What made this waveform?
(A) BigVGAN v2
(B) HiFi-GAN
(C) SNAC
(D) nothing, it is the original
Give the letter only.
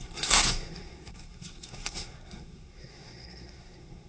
C